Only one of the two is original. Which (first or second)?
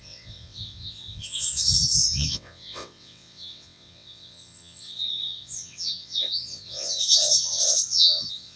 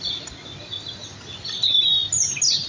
second